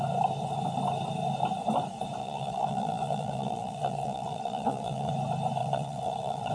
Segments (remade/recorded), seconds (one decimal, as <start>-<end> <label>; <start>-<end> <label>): 0.0-2.2 recorded; 2.2-5.1 remade; 5.1-5.6 recorded; 5.6-6.5 remade